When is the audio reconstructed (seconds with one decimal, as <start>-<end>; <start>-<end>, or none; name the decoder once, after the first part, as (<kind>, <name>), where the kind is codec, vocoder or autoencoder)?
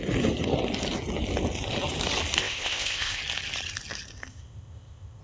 2.4-3.2 (codec, ZipCodec); 4.3-5.2